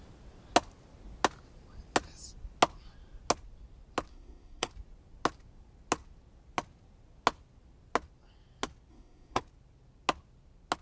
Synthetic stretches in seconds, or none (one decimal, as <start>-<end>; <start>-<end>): 4.1-4.7; 8.9-9.4